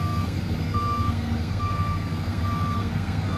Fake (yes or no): yes